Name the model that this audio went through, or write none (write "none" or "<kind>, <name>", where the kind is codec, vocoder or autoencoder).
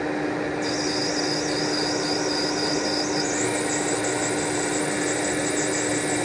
none